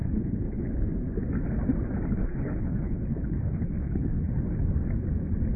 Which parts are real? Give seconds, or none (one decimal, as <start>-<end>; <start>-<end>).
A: 0.6-2.2; 4.3-5.6